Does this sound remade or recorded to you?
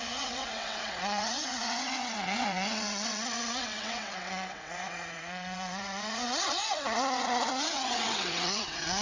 remade